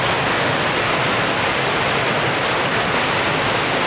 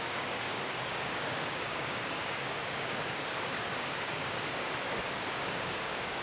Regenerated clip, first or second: second